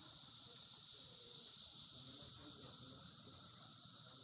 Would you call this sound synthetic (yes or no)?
yes